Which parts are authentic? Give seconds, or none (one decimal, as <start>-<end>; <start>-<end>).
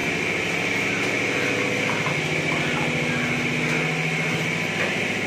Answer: 0.0-2.1